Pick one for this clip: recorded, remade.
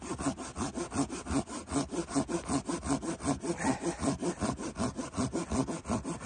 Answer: recorded